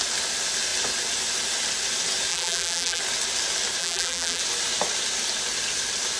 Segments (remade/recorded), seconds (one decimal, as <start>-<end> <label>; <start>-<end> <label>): 0.0-2.3 recorded; 2.3-3.0 remade; 3.0-3.8 recorded; 3.8-4.4 remade; 4.4-6.2 recorded